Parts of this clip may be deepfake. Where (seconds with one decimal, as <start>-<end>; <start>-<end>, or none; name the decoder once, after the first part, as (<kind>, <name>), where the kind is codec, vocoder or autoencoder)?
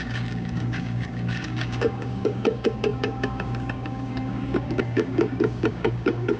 0.0-6.4 (codec, DAC)